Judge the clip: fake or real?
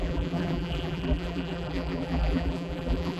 fake